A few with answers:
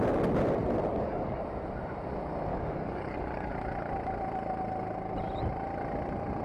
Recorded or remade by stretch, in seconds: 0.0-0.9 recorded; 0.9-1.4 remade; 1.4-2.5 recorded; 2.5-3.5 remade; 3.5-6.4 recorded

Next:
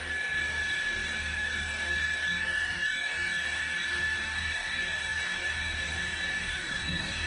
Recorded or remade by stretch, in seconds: 0.0-7.3 remade

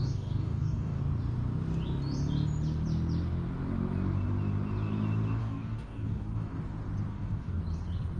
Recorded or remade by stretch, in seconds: 0.0-1.0 remade; 1.0-5.4 recorded; 5.4-6.6 remade; 6.6-7.1 recorded; 7.1-7.6 remade; 7.6-8.2 recorded

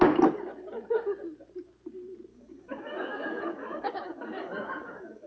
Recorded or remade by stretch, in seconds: 0.0-2.3 recorded; 2.3-5.3 remade